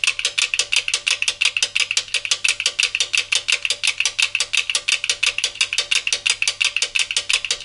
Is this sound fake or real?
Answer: real